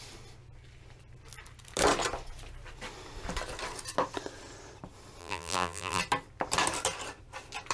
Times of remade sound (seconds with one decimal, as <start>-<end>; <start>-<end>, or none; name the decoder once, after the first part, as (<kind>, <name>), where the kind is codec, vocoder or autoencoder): 5.2-6.0 (vocoder, BigVGAN v2)